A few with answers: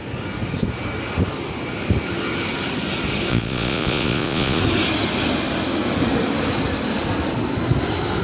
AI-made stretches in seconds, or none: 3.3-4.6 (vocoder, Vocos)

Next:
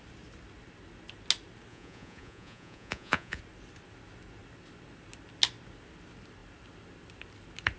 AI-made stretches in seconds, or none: 1.7-3.4 (vocoder, Vocos)

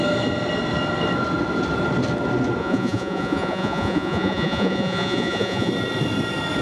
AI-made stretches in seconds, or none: 2.6-5.7 (vocoder, Vocos)

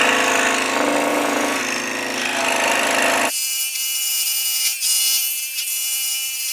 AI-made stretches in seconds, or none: 1.1-1.6 (vocoder, Vocos); 4.1-5.0

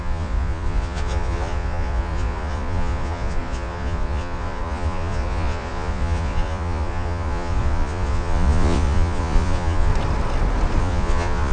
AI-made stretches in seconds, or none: 0.0-9.9 (vocoder, Vocos); 10.8-11.5

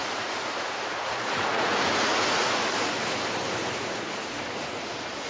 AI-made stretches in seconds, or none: 0.0-3.2 (vocoder, Vocos); 3.6-5.3

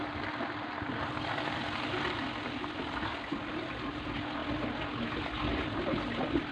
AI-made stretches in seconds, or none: none